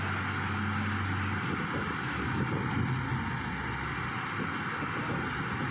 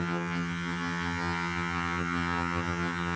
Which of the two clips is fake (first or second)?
second